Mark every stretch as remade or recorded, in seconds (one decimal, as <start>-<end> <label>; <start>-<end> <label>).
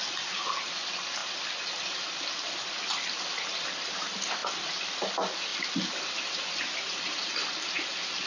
0.0-5.5 recorded; 5.5-6.2 remade; 6.2-8.3 recorded